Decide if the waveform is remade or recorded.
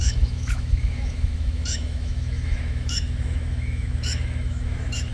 remade